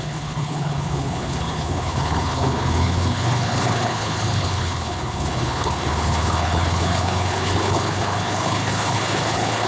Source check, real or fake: fake